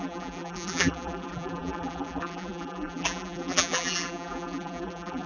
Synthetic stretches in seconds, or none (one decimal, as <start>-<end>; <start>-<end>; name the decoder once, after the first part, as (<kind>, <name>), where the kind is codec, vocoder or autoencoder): 0.0-5.3 (vocoder, BigVGAN v2)